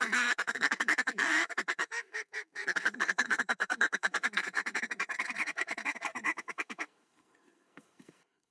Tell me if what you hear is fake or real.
fake